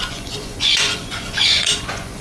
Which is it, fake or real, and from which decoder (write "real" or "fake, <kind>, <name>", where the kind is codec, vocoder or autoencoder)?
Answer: fake, vocoder, Vocos